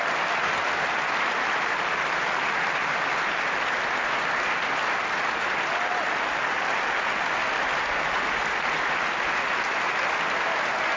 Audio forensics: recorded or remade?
recorded